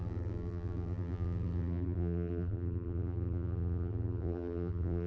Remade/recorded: remade